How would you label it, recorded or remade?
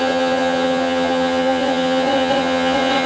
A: remade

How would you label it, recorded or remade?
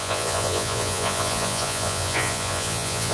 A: remade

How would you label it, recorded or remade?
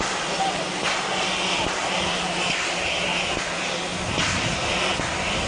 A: recorded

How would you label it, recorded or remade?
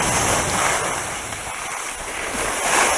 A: recorded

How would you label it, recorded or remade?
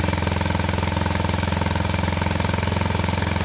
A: recorded